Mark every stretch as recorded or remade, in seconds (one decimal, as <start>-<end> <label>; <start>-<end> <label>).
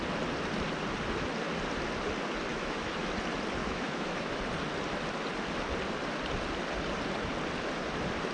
0.0-2.5 recorded; 2.5-3.1 remade; 3.1-3.6 recorded; 3.6-4.4 remade; 4.4-8.3 recorded